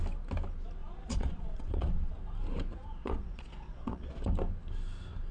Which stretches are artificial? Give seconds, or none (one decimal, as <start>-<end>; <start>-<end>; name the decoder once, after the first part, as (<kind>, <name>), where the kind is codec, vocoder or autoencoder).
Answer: 0.8-2.2 (vocoder, Vocos); 3.0-4.2